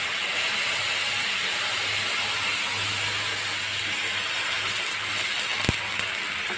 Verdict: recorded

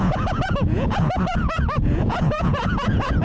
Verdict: remade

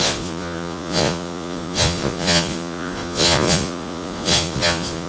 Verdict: remade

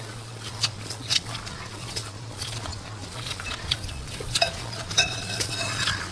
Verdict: remade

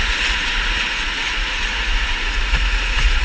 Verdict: remade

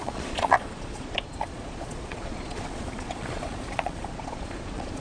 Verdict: remade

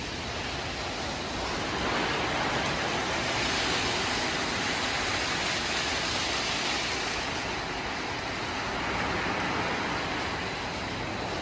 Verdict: recorded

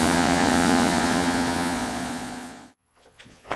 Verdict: remade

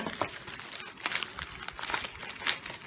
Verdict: recorded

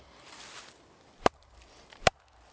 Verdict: recorded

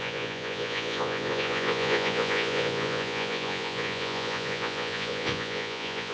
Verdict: remade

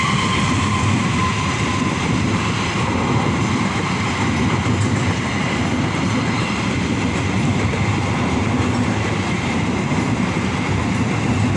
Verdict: recorded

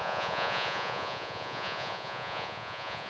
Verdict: remade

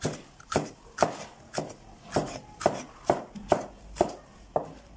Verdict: recorded